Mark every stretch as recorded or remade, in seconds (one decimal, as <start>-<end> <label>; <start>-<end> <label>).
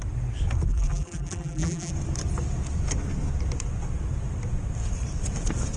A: 0.0-0.7 recorded; 0.7-1.9 remade; 1.9-5.8 recorded